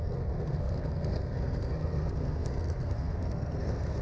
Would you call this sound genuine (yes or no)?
no